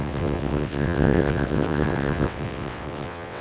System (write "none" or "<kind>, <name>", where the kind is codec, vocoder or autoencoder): vocoder, WaveNeXt